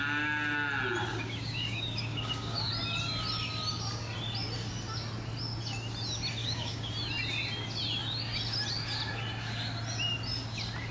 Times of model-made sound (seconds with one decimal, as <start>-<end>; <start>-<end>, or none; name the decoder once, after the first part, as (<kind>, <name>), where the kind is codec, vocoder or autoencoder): 1.1-2.7 (codec, DAC); 6.4-6.9